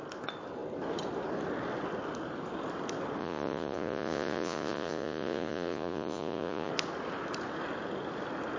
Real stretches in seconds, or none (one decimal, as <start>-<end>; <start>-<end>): 0.0-3.2; 6.7-8.6

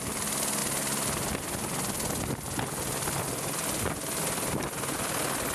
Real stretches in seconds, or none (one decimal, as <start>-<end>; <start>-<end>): 0.0-5.5

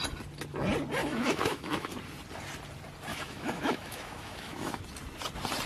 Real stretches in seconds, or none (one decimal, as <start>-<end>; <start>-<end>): 0.0-1.0; 1.9-3.1; 4.8-5.7

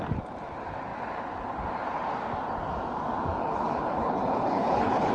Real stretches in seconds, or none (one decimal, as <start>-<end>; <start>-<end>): 0.0-3.4

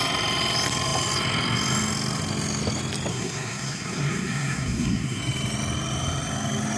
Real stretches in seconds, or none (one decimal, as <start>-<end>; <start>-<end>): 0.0-3.1; 5.2-6.8